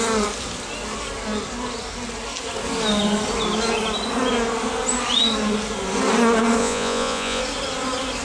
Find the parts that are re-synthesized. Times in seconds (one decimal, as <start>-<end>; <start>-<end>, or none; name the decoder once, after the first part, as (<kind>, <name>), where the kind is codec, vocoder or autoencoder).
6.6-7.4 (vocoder, Vocos)